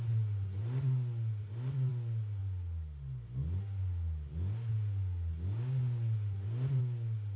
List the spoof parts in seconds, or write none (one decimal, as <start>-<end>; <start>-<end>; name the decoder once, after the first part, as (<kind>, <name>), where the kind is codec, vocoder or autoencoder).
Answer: none